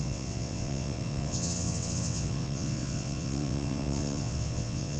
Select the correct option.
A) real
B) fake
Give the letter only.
B